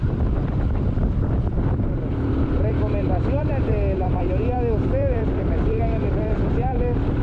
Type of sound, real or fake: fake